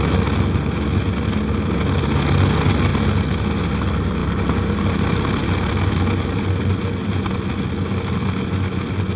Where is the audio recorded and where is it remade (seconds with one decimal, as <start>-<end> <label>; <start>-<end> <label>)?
0.0-9.2 recorded